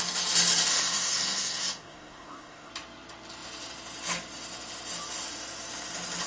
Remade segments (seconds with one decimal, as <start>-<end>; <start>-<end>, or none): 0.7-2.7